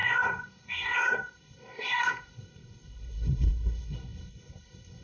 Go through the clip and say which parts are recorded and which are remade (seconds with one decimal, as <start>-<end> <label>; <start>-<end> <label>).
0.0-5.0 remade